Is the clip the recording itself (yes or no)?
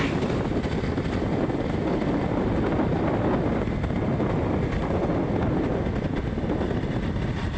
yes